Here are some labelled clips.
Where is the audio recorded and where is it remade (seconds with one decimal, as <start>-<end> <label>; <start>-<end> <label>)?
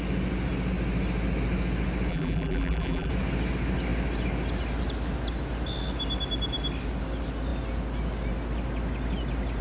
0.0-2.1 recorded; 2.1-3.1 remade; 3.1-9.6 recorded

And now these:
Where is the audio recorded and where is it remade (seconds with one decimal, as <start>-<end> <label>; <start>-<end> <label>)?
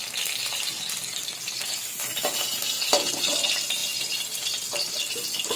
0.0-2.2 recorded; 2.2-3.3 remade; 3.3-3.8 recorded; 3.8-5.0 remade; 5.0-5.6 recorded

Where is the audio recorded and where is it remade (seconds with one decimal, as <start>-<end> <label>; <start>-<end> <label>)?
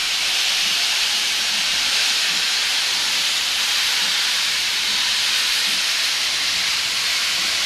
0.0-2.2 remade; 2.2-2.7 recorded; 2.7-7.0 remade; 7.0-7.7 recorded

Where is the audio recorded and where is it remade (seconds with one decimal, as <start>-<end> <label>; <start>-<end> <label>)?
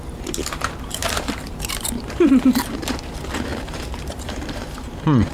0.0-5.3 remade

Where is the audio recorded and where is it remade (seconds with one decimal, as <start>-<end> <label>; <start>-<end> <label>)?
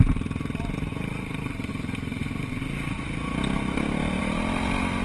0.0-1.7 remade; 1.7-4.2 recorded; 4.2-5.0 remade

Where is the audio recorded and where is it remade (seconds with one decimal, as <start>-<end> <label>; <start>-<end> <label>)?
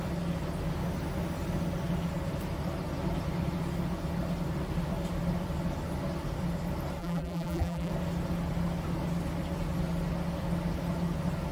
0.0-7.0 recorded; 7.0-7.9 remade; 7.9-11.5 recorded